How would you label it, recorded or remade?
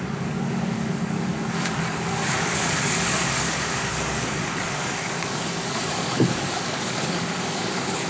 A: remade